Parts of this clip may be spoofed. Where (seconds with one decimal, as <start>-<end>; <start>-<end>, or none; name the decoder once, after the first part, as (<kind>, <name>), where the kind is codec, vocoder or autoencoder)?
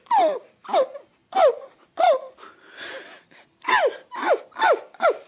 none